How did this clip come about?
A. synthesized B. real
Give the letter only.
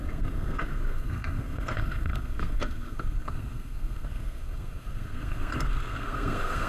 A